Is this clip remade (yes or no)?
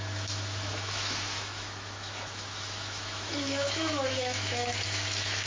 yes